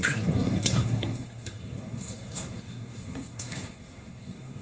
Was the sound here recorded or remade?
remade